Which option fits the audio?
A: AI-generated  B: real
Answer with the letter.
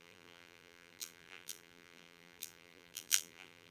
A